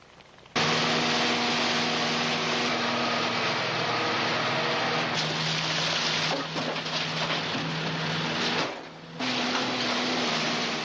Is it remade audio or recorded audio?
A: recorded